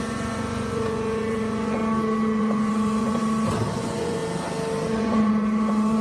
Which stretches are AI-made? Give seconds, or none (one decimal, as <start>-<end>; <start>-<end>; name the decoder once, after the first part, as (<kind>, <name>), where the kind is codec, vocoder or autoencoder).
0.0-1.8 (vocoder, Vocos); 2.4-3.2; 3.7-4.2; 5.0-6.0